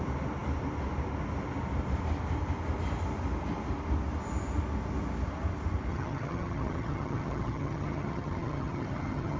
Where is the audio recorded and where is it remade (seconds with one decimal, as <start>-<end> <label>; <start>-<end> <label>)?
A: 0.0-5.9 recorded; 5.9-9.4 remade